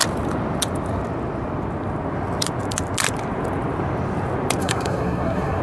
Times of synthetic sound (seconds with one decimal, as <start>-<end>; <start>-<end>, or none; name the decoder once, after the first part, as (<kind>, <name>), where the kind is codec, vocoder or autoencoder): 4.6-5.6 (codec, SNAC)